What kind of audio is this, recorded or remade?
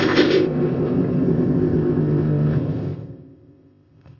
remade